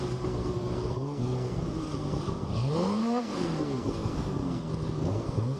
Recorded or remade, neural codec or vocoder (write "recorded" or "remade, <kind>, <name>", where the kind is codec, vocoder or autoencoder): remade, codec, SNAC